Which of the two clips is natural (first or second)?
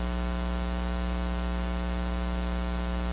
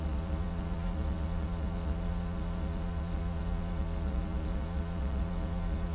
first